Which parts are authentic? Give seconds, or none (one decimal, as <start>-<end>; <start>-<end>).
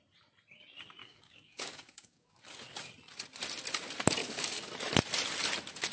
0.0-1.0; 2.4-4.2; 4.7-5.9